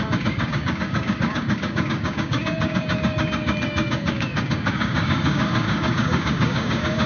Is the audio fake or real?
fake